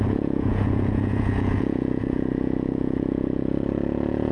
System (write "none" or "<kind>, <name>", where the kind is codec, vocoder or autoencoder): vocoder, Vocos